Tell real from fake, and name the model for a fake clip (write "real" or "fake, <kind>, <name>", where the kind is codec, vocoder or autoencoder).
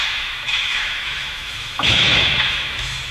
fake, autoencoder, DAC-VAE